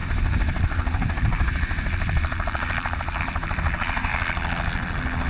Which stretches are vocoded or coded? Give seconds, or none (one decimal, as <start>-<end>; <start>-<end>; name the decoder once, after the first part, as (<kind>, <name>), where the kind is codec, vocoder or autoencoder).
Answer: 0.0-4.1 (vocoder, BigVGAN v2)

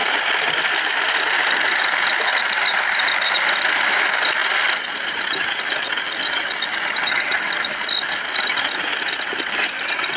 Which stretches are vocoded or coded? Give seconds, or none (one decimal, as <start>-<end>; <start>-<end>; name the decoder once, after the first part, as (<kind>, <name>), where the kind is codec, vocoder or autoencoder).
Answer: 0.0-0.9 (vocoder, BigVGAN v2); 4.4-5.6

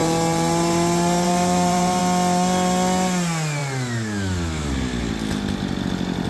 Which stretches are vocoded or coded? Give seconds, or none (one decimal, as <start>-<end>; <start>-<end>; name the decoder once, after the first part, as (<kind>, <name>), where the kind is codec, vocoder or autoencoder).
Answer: 0.0-2.0 (vocoder, BigVGAN v2)

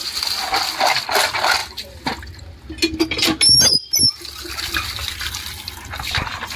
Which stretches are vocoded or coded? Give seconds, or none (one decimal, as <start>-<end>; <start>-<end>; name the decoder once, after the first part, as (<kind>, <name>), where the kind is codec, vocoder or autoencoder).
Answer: none